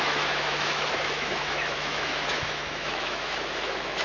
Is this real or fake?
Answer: fake